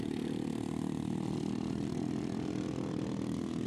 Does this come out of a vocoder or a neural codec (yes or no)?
no